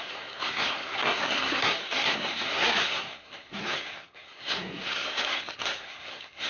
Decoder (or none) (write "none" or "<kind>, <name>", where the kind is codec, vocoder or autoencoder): codec, SNAC